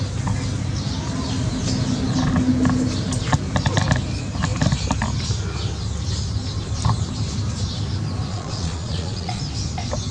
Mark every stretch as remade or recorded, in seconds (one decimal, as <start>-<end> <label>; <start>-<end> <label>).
0.0-8.3 recorded; 8.3-9.4 remade; 9.4-10.1 recorded